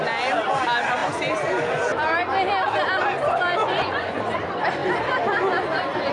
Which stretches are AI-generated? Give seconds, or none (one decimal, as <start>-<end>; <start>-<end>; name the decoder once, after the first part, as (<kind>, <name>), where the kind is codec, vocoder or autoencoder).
3.6-4.2 (vocoder, Vocos)